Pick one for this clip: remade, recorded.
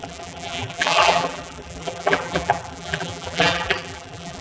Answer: remade